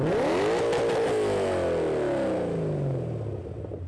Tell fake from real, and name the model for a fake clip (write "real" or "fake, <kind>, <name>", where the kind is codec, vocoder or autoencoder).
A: real